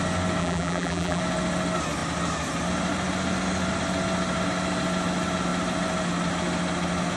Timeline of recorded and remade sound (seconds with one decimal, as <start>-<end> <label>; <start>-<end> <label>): 0.0-0.4 recorded; 0.4-1.2 remade; 1.2-7.2 recorded